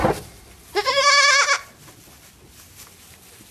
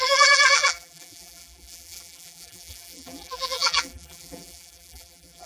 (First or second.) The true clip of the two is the first